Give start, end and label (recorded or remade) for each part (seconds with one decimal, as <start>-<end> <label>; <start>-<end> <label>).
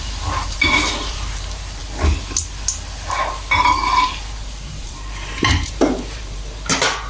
0.0-1.8 remade; 1.8-3.6 recorded; 3.6-7.1 remade